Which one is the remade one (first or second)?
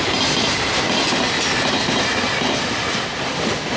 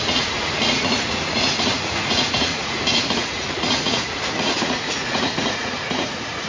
second